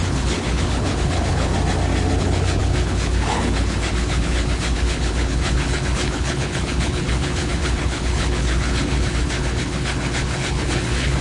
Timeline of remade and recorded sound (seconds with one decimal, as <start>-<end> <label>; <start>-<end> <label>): 0.0-1.5 remade; 1.5-2.2 recorded; 2.2-11.2 remade